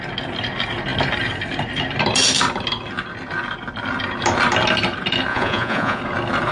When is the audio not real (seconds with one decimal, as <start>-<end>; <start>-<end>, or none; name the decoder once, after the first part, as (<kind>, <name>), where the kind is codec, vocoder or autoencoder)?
5.3-6.0 (vocoder, Vocos)